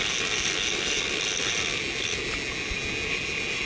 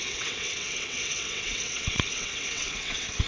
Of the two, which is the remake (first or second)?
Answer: second